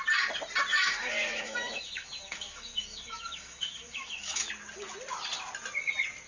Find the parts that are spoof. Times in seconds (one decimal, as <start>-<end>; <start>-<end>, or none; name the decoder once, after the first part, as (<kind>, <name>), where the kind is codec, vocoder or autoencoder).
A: 0.7-4.5 (autoencoder, DAC-VAE)